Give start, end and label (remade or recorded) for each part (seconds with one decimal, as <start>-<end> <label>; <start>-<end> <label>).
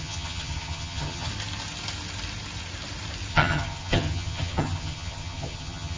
0.0-1.3 remade; 1.3-3.3 recorded; 3.3-6.0 remade